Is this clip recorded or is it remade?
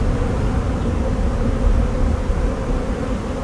recorded